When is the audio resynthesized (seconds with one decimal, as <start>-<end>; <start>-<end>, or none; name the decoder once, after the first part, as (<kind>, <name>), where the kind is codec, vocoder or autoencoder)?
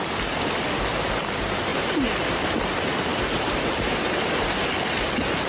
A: 1.7-2.6 (vocoder, BigVGAN v2); 3.1-4.6